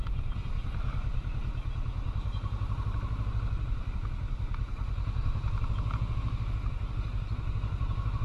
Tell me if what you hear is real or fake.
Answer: real